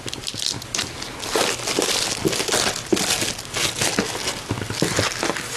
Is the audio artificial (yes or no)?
no